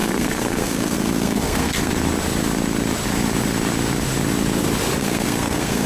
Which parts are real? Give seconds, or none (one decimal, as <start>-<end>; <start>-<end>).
1.9-5.0